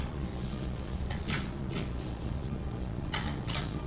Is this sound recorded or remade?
remade